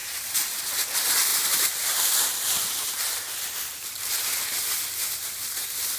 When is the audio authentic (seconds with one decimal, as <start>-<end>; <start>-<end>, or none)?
0.6-1.3; 3.0-6.0